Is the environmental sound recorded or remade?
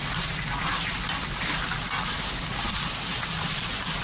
recorded